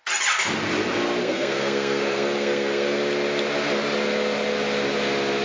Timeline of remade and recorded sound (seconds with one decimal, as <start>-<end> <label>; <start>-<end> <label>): 0.0-1.2 recorded; 1.2-3.0 remade; 3.0-5.4 recorded

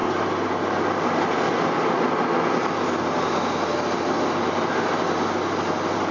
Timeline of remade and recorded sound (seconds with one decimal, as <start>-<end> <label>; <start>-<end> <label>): 0.0-6.1 recorded

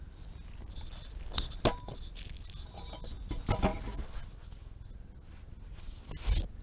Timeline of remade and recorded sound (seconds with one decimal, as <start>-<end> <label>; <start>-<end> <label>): 0.0-6.6 recorded

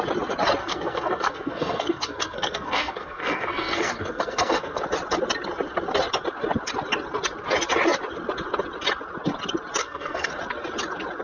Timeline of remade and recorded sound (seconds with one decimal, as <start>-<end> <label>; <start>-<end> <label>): 0.0-0.6 recorded; 0.6-4.8 remade; 4.8-9.8 recorded; 9.8-10.3 remade; 10.3-11.2 recorded

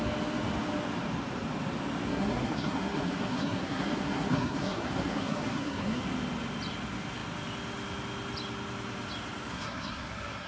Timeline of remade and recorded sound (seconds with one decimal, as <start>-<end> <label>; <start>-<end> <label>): 0.0-2.1 recorded; 2.1-6.0 remade; 6.0-9.5 recorded; 9.5-10.5 remade

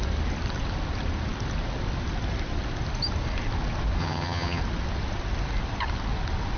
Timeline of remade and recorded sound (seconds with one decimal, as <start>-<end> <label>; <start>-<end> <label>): 0.0-4.0 recorded; 4.0-4.6 remade; 4.6-6.6 recorded

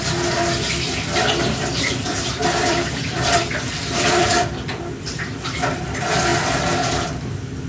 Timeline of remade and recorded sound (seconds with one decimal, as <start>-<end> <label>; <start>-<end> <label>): 0.0-2.1 recorded; 2.1-5.8 remade; 5.8-6.3 recorded; 6.3-7.1 remade; 7.1-7.7 recorded

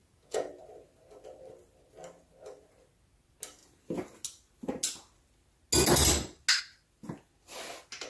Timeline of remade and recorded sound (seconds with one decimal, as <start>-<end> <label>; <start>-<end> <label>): 0.0-0.5 remade; 0.5-8.1 recorded